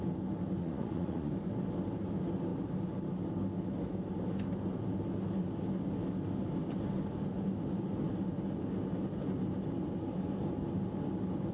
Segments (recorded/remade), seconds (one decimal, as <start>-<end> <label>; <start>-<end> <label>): 0.0-0.6 recorded; 0.6-1.3 remade; 1.3-11.5 recorded